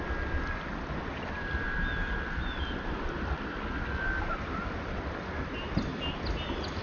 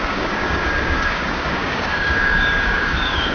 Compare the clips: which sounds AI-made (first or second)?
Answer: second